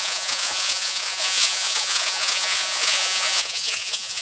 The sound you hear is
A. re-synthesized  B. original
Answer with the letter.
A